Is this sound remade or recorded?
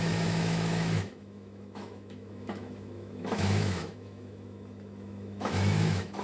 remade